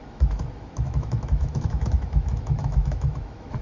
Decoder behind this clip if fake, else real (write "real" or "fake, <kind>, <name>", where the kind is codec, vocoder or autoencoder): fake, autoencoder, DAC-VAE